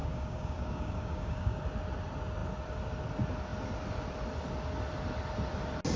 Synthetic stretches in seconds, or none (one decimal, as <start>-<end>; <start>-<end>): 0.0-1.6